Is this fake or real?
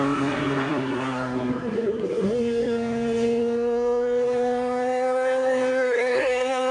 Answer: fake